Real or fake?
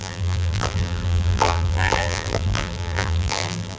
fake